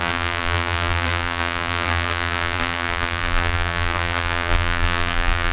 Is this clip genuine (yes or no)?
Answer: no